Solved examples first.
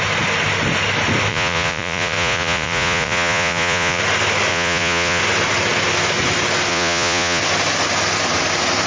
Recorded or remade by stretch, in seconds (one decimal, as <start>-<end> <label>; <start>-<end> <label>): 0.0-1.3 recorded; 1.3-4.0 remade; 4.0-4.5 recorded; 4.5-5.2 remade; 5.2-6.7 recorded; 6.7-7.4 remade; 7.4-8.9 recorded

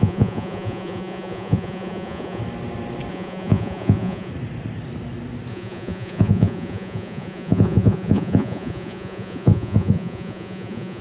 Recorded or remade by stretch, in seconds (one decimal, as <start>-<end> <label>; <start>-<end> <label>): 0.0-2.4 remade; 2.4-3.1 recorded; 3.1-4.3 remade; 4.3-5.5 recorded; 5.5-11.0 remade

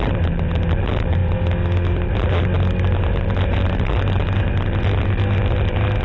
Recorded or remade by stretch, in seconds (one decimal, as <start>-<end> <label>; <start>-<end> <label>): 0.0-6.0 recorded

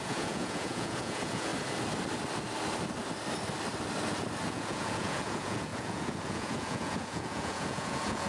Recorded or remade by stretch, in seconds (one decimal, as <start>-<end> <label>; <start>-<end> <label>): 0.0-1.5 remade; 1.5-4.5 recorded; 4.5-8.3 remade

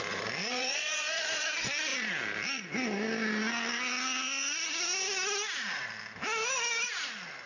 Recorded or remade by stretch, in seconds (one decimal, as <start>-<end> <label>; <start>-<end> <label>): 0.0-0.4 recorded; 0.4-1.5 remade; 1.5-7.5 recorded

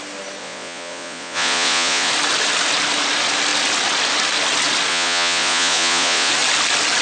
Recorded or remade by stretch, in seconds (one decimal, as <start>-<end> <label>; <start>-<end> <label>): 0.0-0.4 recorded; 0.4-2.1 remade; 2.1-4.9 recorded; 4.9-6.3 remade; 6.3-7.0 recorded